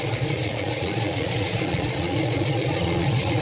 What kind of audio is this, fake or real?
fake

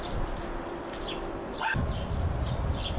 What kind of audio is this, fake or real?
real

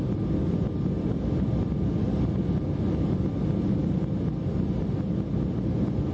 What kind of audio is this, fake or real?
real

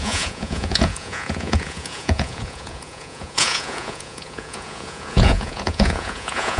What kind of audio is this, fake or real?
fake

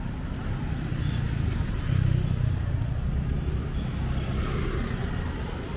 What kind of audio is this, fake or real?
real